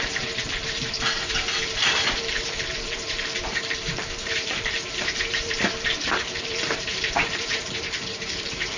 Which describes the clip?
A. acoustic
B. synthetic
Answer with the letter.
B